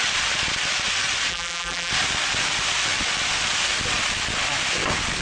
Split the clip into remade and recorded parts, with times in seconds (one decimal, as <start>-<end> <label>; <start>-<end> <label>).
0.0-1.3 recorded; 1.3-1.9 remade; 1.9-5.2 recorded